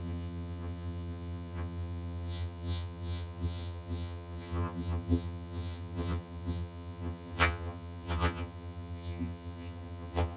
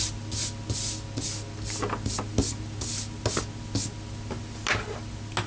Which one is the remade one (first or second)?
first